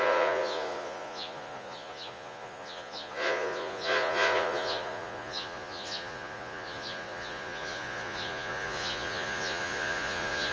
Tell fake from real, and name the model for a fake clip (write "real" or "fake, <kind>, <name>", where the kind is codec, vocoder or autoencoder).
fake, vocoder, Vocos